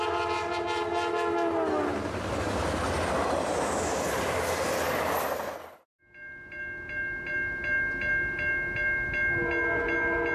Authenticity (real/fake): real